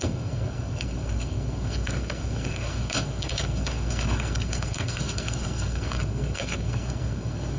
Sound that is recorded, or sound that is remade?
remade